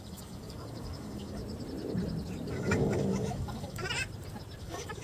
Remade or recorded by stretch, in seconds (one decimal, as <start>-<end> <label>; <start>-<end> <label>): 0.0-1.4 remade; 1.4-2.5 recorded; 2.5-3.8 remade; 3.8-4.6 recorded; 4.6-5.0 remade